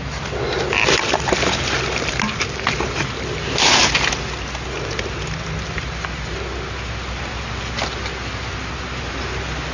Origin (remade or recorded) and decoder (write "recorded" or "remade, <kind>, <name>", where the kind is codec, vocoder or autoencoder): recorded